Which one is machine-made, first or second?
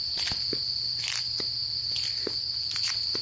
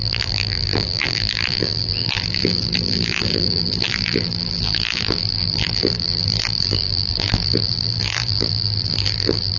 second